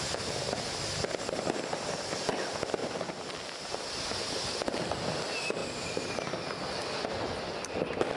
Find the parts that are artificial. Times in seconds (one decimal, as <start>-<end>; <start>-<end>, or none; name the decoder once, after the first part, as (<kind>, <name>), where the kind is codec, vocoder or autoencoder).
2.8-3.3 (vocoder, BigVGAN v2); 5.6-6.2